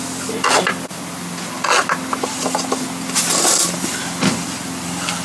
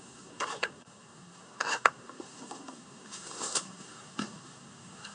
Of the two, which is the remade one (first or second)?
second